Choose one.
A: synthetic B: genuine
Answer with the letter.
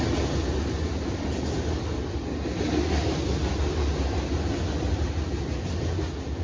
B